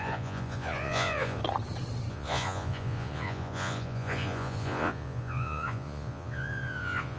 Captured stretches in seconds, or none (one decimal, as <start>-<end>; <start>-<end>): 1.4-2.1